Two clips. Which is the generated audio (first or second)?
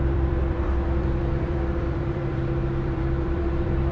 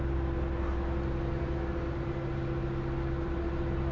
first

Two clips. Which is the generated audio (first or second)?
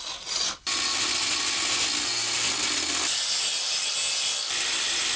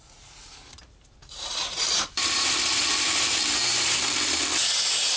second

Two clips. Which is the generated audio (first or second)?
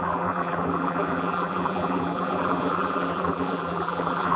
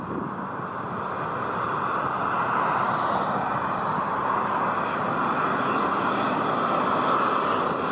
first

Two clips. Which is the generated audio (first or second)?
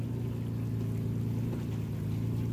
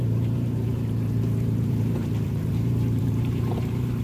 second